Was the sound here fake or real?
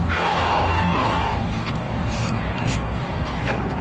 fake